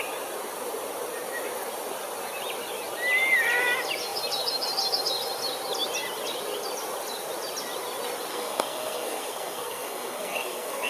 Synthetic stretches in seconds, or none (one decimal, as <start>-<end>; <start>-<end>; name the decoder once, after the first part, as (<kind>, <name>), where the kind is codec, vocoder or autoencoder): 8.3-10.9 (codec, SNAC)